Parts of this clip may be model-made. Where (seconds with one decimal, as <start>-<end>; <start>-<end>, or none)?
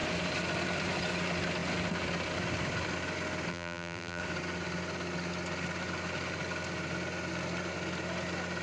3.5-4.2